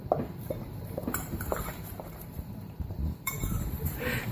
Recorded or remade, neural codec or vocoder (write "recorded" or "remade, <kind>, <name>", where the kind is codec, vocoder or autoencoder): remade, vocoder, BigVGAN v2